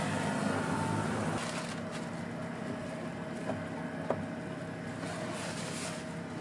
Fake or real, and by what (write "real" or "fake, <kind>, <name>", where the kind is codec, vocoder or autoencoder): real